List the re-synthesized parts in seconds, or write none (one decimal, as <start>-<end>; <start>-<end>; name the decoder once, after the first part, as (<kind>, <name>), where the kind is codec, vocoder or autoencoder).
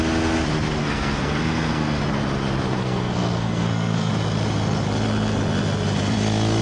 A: 0.8-2.0 (codec, SNAC); 2.8-4.1